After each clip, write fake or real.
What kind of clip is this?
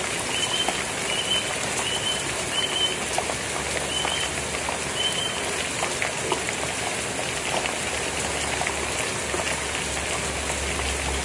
real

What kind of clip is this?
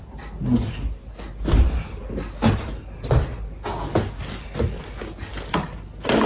real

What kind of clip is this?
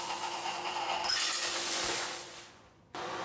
fake